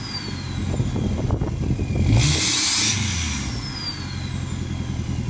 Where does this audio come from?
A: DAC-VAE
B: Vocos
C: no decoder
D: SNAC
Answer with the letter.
C